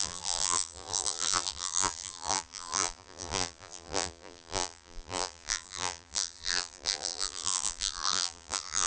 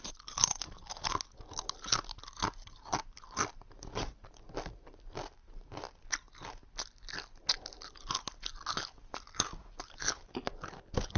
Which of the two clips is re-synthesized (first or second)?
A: first